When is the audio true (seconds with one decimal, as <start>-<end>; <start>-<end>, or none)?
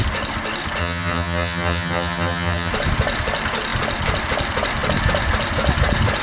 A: 0.0-0.8; 2.7-6.2